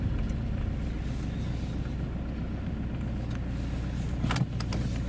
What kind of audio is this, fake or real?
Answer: real